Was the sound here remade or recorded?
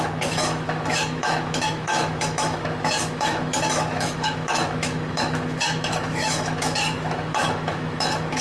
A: remade